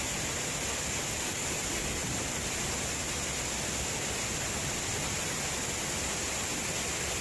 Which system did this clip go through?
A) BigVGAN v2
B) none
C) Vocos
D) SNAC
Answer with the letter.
B